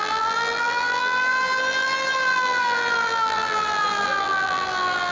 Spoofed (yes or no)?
yes